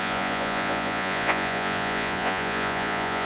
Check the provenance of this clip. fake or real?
fake